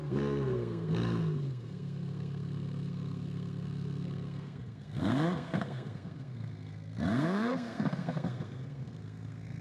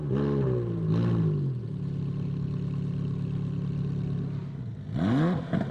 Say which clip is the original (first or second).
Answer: second